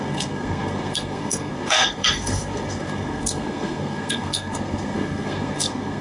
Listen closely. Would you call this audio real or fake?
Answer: fake